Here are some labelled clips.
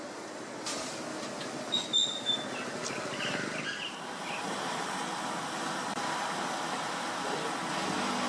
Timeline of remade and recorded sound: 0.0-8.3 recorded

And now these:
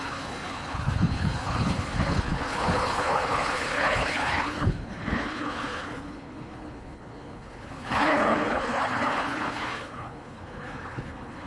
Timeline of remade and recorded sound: 0.0-11.5 remade

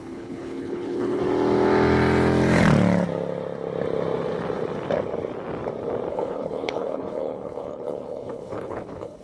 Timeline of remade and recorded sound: 0.0-1.2 remade; 1.2-6.1 recorded; 6.1-9.2 remade

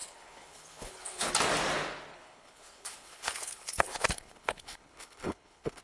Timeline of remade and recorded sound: 0.0-1.3 remade; 1.3-2.1 recorded; 2.1-5.8 remade

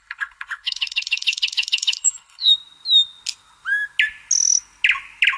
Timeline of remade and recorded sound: 0.0-2.5 remade; 2.5-5.4 recorded

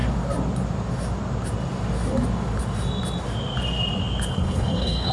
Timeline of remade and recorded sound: 0.0-4.3 recorded; 4.3-5.1 remade

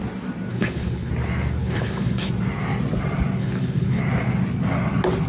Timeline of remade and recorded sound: 0.0-0.5 recorded; 0.5-1.1 remade; 1.1-1.6 recorded; 1.6-2.3 remade; 2.3-3.4 recorded; 3.4-4.0 remade; 4.0-5.3 recorded